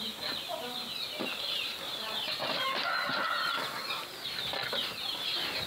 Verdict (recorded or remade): recorded